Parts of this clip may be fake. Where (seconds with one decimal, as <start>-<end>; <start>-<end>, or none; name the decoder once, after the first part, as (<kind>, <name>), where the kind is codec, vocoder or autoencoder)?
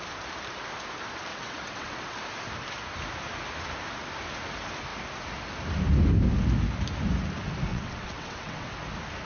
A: 1.3-2.2 (vocoder, WaveNeXt); 7.7-8.7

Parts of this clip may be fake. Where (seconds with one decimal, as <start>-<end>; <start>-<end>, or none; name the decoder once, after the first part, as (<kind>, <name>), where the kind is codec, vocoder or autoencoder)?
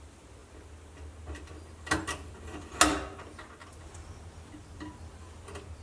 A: none